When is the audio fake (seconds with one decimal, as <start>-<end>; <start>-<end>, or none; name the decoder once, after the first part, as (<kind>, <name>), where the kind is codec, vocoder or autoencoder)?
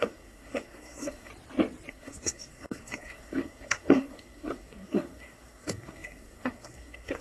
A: 0.0-1.3 (codec, SNAC); 1.9-7.2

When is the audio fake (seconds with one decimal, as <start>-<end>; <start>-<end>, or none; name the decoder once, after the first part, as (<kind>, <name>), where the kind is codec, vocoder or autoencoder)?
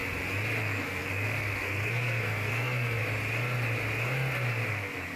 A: 0.6-3.0 (codec, SNAC); 4.7-5.2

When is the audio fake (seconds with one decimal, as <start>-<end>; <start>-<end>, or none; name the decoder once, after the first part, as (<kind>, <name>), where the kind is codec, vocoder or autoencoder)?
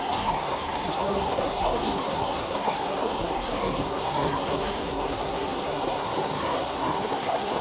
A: 0.0-7.6 (codec, SNAC)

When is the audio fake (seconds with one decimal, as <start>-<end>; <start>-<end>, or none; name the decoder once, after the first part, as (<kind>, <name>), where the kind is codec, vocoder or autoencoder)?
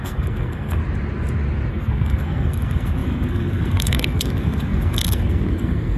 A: 0.0-0.8 (codec, SNAC); 1.7-6.0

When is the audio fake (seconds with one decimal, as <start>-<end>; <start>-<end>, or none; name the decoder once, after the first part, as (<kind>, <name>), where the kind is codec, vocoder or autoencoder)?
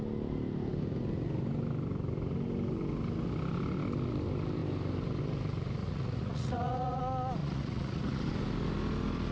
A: 5.8-7.0 (vocoder, Vocos); 7.4-8.2